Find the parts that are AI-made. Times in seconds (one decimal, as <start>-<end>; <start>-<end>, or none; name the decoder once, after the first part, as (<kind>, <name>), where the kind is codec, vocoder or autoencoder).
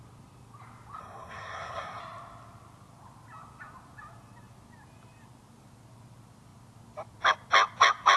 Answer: 1.0-2.0 (codec, SNAC)